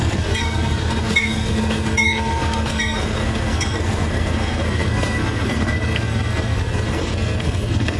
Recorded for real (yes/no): no